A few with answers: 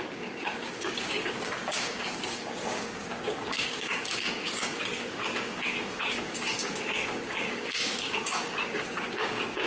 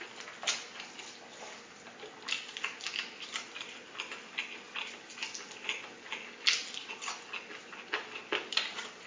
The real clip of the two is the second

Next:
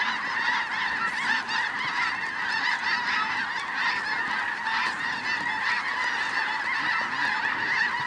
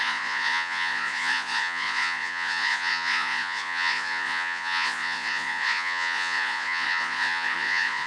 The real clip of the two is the first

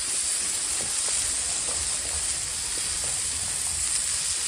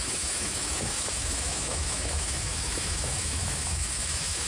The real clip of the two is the first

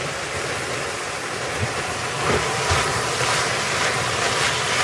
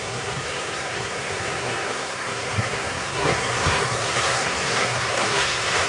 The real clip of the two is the first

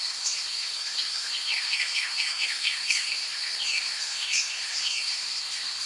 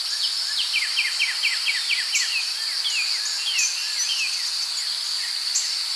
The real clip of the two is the second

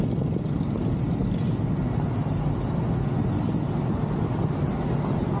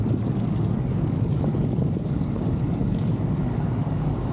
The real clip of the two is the first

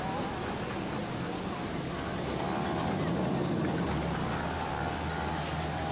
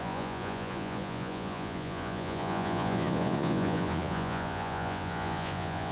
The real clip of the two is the first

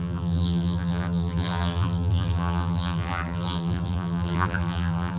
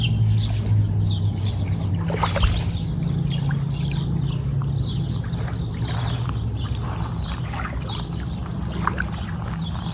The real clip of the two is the second